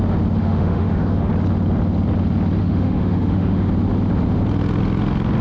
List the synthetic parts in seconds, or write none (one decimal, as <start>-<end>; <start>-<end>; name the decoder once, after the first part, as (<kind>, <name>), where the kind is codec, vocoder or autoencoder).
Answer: 0.4-1.3 (autoencoder, DAC-VAE); 2.6-3.7